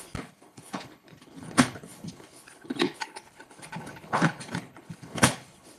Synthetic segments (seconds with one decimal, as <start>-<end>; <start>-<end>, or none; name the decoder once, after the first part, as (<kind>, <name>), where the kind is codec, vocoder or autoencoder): 0.0-5.8 (codec, HILCodec)